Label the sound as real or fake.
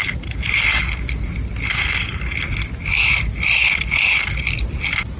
real